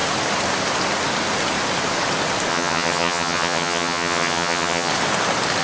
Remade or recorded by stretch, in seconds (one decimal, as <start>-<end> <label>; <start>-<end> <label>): 0.0-2.5 recorded; 2.5-4.9 remade; 4.9-5.6 recorded